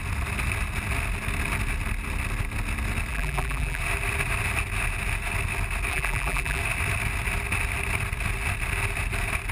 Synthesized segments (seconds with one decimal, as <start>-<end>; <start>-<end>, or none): 3.1-3.8; 5.9-6.6